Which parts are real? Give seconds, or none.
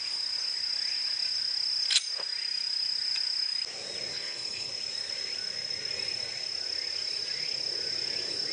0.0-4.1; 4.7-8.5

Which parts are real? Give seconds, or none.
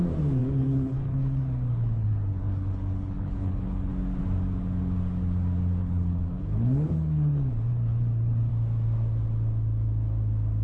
0.0-0.4; 3.9-5.8; 8.5-10.6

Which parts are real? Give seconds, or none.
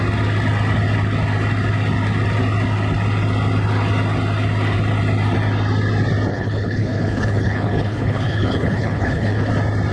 0.0-6.3; 9.5-9.9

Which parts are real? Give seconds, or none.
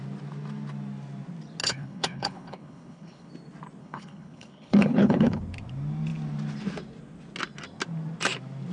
0.0-1.6; 3.3-3.8; 5.4-8.7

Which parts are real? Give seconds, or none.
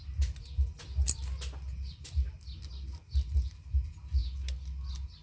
0.0-5.2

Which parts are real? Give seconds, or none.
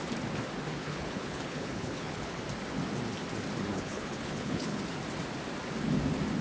0.0-0.8; 2.4-3.7; 4.8-6.4